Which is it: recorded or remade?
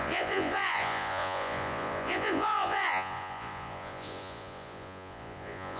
remade